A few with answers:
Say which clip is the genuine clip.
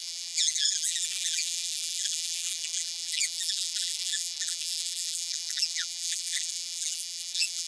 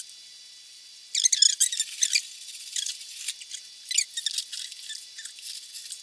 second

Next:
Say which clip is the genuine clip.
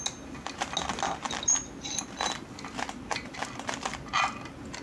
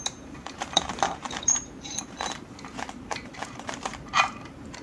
first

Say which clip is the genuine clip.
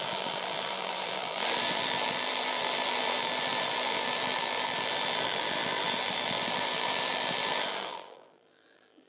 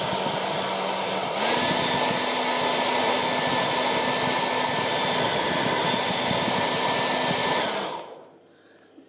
second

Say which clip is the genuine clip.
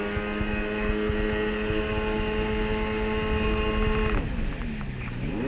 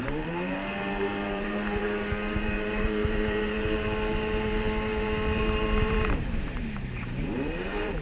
first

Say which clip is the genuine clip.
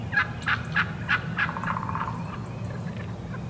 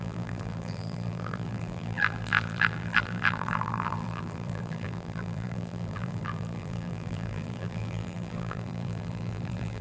first